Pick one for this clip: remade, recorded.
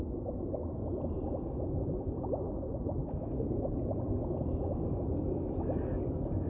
recorded